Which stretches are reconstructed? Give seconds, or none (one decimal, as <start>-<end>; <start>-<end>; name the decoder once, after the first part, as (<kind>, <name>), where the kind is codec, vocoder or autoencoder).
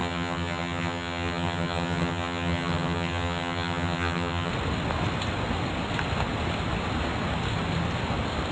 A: 0.0-4.5 (vocoder, HiFi-GAN)